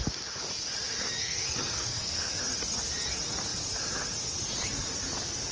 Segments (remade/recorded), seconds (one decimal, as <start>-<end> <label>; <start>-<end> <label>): 0.0-1.2 recorded; 1.2-2.4 remade; 2.4-5.5 recorded

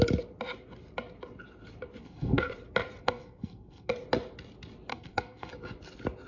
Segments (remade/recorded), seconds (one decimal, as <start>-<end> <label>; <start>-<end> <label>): 0.0-2.0 recorded; 2.0-2.5 remade; 2.5-3.0 recorded; 3.0-3.9 remade; 3.9-4.9 recorded; 4.9-5.5 remade; 5.5-6.3 recorded

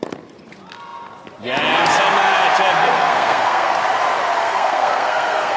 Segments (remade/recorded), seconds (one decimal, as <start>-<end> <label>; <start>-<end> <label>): 0.0-2.8 recorded; 2.8-3.7 remade; 3.7-4.4 recorded; 4.4-5.6 remade

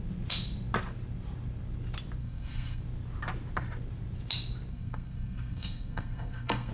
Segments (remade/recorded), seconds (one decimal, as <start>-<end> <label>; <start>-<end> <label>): 0.0-2.2 recorded; 2.2-2.8 remade; 2.8-4.7 recorded; 4.7-6.7 remade

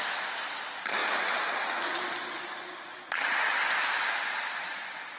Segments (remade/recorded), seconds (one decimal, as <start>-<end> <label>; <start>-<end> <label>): 0.0-5.2 recorded